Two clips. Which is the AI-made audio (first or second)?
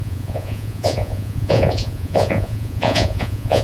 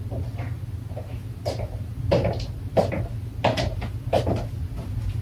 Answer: first